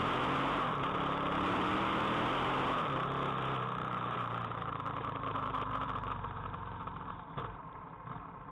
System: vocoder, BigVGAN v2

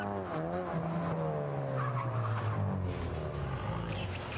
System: none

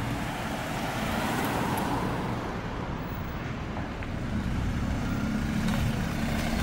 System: vocoder, BigVGAN v2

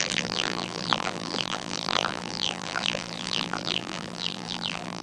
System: vocoder, BigVGAN v2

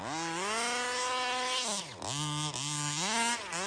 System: none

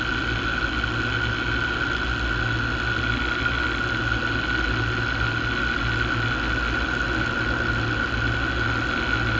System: none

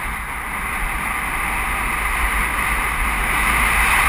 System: none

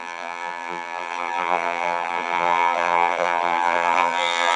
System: vocoder, BigVGAN v2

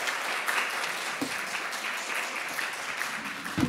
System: none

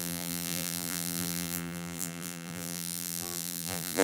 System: vocoder, BigVGAN v2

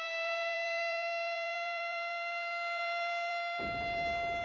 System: vocoder, BigVGAN v2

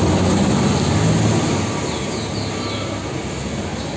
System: none